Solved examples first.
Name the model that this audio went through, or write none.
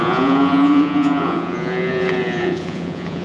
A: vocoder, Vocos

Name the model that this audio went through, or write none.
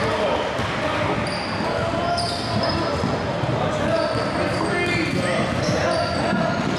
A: none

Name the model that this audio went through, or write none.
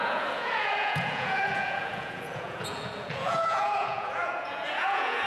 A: vocoder, Vocos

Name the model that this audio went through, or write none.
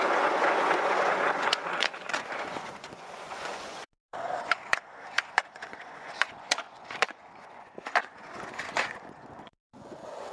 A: vocoder, Vocos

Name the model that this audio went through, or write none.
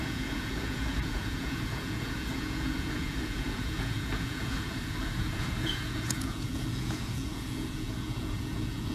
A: vocoder, Vocos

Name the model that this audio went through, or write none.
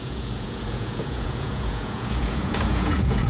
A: vocoder, Vocos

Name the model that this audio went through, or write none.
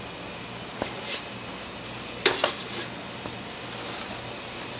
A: none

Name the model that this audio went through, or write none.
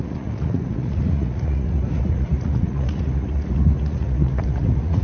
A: vocoder, Vocos